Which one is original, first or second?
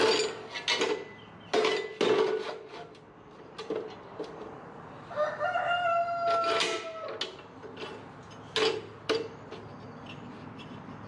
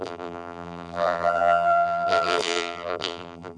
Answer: first